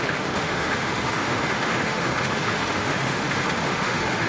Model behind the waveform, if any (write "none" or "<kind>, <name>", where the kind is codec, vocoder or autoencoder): autoencoder, DAC-VAE